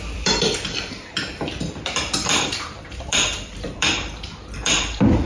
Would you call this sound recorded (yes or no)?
no